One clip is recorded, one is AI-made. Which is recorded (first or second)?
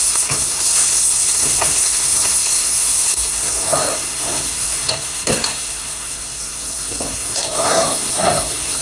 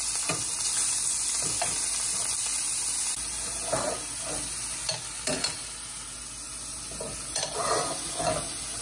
second